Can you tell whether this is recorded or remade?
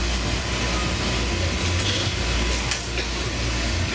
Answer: recorded